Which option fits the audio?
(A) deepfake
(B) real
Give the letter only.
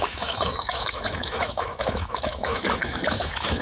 A